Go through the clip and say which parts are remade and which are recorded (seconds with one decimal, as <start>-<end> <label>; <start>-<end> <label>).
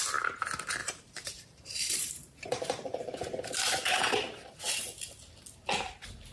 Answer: 0.0-0.8 recorded; 0.8-4.6 remade; 4.6-6.3 recorded